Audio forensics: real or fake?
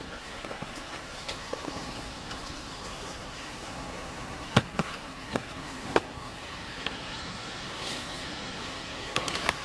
fake